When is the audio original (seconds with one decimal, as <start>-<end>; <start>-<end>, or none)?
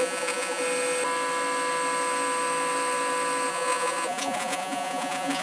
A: 0.6-3.5